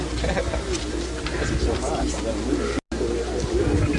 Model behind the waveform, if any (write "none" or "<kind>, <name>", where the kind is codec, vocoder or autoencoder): none